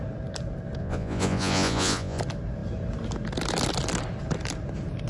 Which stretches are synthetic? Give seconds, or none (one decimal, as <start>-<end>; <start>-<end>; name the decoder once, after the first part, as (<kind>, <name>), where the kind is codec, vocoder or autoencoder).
0.8-2.2 (vocoder, Vocos)